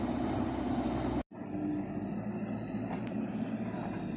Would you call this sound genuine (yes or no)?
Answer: yes